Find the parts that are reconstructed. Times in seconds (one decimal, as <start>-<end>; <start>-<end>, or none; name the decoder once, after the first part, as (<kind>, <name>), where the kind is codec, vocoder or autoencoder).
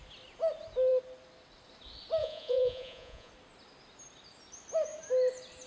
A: 2.2-3.3 (vocoder, Vocos)